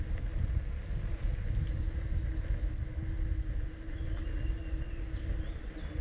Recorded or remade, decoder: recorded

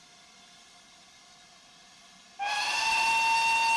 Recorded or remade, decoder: recorded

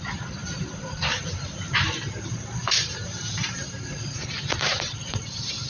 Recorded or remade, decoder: remade, vocoder, BigVGAN v2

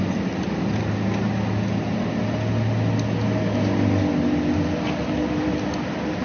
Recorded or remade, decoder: recorded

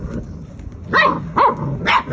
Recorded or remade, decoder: recorded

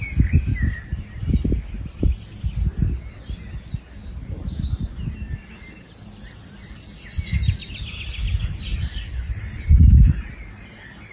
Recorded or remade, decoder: recorded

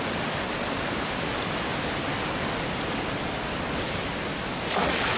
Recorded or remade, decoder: recorded